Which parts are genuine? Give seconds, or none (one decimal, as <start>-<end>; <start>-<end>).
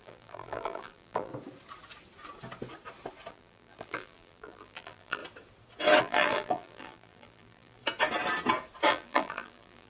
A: 1.3-3.3; 5.2-6.0; 7.8-8.9